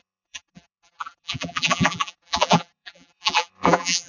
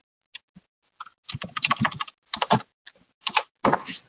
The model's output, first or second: first